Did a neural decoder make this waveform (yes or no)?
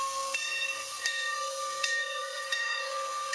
yes